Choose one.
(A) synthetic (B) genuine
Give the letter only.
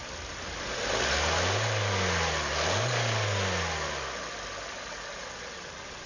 B